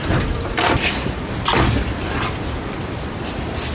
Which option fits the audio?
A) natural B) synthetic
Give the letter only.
B